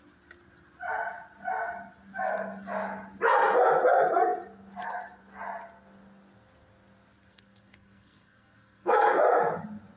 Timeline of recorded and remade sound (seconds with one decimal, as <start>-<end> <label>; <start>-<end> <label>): 0.0-7.3 recorded; 7.3-9.2 remade; 9.2-10.0 recorded